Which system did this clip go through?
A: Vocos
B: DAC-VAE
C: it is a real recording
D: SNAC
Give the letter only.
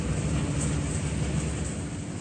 C